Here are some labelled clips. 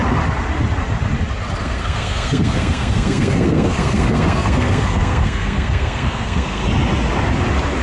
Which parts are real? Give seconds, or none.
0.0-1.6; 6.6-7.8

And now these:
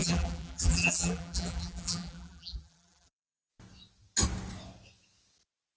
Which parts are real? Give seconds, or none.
3.5-5.8

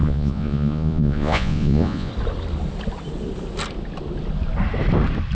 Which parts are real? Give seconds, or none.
2.1-5.3